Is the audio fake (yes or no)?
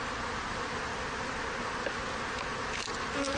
no